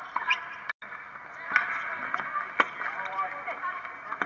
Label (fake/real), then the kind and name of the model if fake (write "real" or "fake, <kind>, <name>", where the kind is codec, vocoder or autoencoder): real